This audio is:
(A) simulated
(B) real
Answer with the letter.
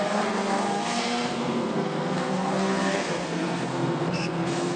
A